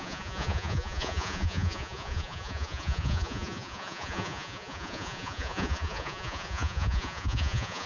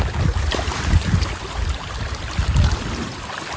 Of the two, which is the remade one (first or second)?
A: first